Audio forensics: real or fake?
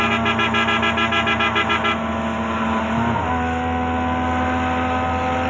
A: real